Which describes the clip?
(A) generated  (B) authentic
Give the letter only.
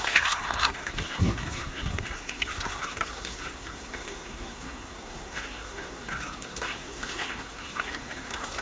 A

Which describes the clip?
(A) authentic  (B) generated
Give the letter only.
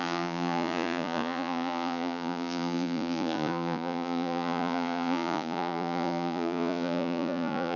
B